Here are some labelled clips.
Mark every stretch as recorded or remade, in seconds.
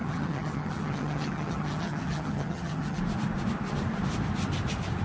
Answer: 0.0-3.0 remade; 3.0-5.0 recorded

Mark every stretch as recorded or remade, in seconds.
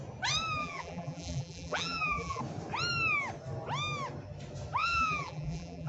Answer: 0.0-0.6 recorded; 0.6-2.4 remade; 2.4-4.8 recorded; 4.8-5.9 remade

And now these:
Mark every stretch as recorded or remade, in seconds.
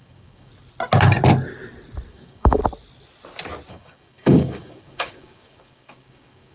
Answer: 0.0-0.5 remade; 0.5-2.1 recorded; 2.1-2.6 remade; 2.6-3.7 recorded; 3.7-6.5 remade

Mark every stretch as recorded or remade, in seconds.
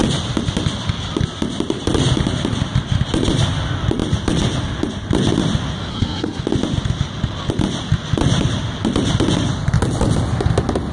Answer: 0.0-5.9 recorded; 5.9-6.4 remade; 6.4-10.9 recorded